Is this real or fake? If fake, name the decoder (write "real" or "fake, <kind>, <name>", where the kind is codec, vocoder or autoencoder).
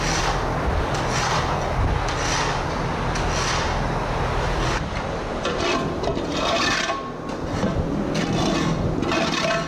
real